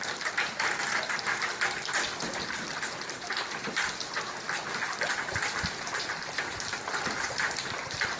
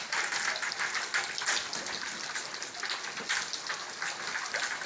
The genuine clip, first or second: second